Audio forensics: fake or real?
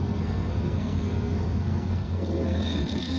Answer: fake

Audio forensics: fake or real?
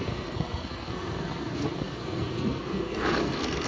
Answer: fake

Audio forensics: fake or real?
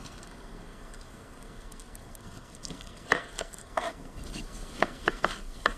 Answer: fake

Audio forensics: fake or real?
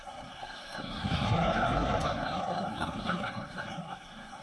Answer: fake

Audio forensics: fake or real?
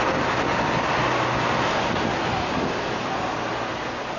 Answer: real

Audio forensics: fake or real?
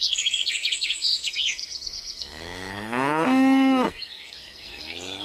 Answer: fake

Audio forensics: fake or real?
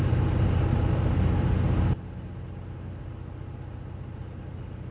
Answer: real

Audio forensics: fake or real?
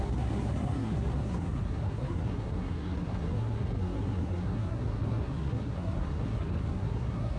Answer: fake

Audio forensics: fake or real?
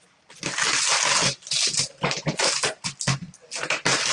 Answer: real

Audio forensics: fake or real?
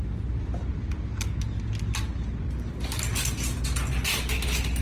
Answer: real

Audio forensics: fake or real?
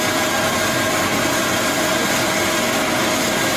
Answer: real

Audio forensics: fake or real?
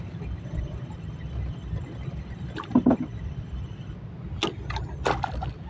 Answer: real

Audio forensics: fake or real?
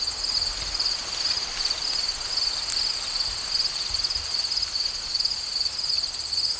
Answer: real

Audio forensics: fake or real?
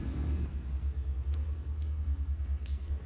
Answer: fake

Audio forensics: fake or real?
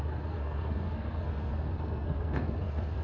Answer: fake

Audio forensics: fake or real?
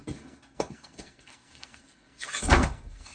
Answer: fake